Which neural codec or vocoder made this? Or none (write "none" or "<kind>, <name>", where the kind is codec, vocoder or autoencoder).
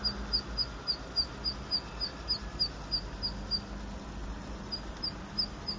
none